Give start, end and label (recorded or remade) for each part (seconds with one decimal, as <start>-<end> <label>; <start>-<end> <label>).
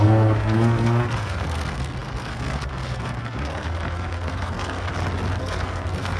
0.0-4.9 remade; 4.9-5.4 recorded; 5.4-6.2 remade